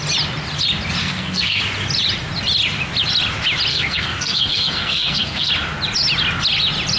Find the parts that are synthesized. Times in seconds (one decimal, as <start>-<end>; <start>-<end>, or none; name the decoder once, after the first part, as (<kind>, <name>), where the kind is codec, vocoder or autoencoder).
1.0-1.6 (codec, SNAC); 3.7-5.5